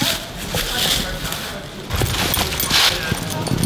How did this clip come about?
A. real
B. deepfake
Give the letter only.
A